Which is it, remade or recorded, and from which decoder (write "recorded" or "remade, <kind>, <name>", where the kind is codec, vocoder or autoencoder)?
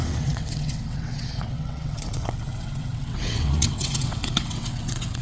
remade, vocoder, WaveNeXt